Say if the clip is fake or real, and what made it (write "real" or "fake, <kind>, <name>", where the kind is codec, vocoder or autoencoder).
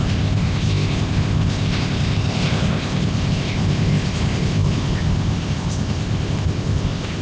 fake, codec, ZipCodec